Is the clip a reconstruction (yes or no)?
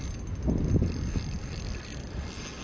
no